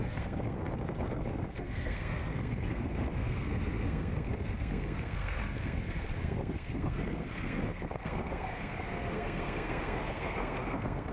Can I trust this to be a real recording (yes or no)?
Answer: no